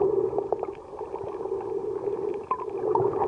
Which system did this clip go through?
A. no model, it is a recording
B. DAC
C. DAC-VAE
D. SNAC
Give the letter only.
A